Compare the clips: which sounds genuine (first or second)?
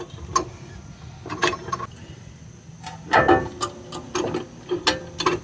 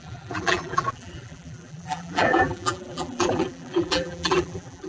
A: first